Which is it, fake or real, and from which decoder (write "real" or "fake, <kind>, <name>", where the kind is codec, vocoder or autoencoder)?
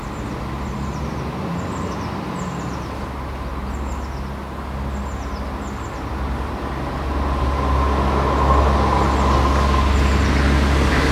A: real